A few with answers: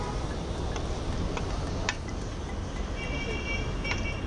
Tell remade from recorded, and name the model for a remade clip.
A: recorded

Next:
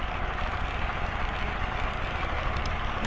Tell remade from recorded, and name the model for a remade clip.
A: recorded